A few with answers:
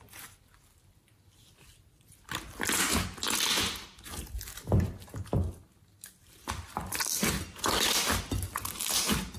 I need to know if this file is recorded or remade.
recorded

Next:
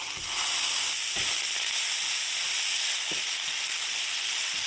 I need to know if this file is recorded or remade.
recorded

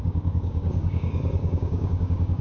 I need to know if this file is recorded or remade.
remade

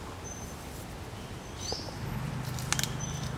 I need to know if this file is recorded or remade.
recorded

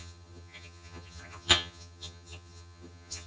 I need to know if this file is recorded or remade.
remade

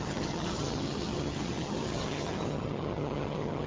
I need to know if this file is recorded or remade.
remade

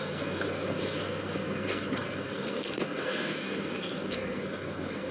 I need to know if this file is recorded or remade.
remade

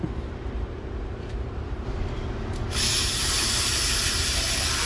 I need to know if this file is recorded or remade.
remade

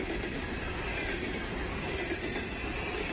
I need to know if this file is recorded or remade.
recorded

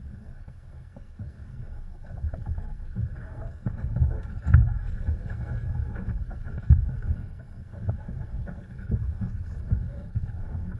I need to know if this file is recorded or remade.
remade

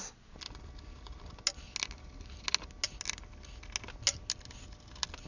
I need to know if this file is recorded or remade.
recorded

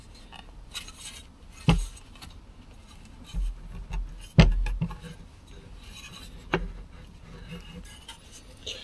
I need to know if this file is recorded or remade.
recorded